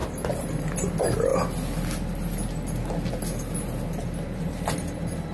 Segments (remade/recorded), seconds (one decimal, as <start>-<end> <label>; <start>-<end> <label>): 0.0-5.3 recorded